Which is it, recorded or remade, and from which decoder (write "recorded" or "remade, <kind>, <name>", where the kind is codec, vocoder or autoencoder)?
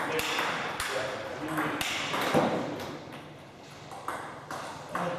recorded